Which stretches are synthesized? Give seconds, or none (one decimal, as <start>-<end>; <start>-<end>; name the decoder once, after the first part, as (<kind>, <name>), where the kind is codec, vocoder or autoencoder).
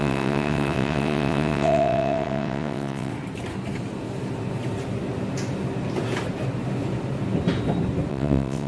0.0-3.1 (vocoder, WaveNeXt); 8.1-8.7